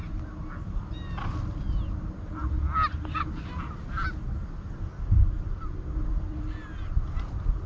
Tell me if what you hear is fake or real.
real